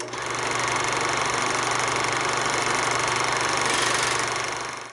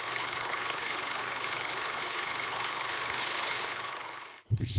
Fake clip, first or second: second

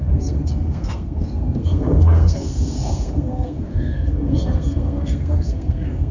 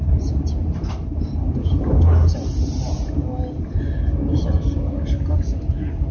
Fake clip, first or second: first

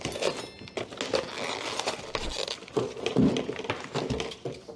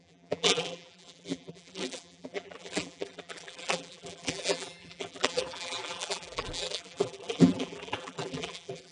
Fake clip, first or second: second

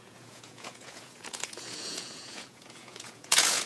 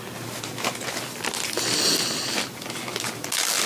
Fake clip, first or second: first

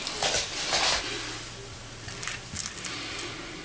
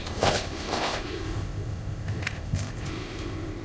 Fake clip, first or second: second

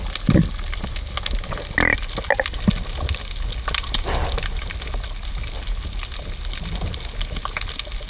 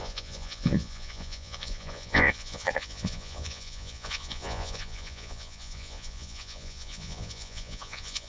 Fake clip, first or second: second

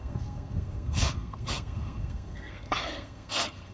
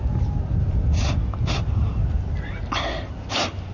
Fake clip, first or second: first